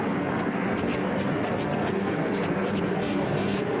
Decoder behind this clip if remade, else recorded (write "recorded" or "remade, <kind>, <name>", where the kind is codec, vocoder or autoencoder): remade, codec, SNAC